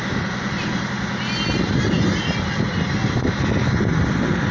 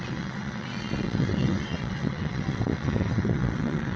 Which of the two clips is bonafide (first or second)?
first